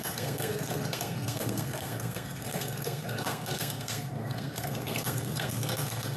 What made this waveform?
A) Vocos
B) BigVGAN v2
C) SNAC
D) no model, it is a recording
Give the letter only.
C